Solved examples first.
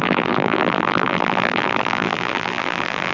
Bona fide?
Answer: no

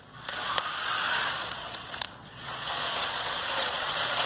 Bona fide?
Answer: no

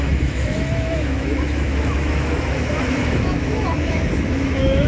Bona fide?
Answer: no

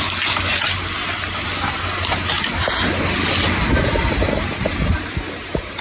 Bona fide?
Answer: yes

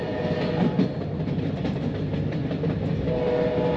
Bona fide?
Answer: yes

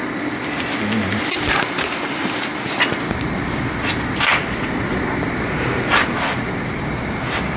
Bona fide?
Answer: yes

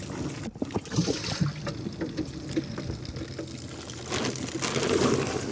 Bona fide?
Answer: yes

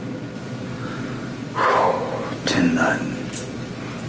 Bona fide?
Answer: yes